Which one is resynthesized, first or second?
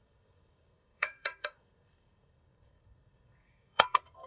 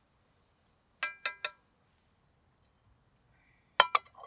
first